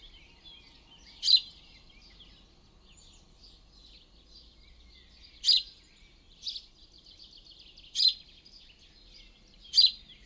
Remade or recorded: recorded